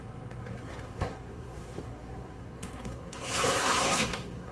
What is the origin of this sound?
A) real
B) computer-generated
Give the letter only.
B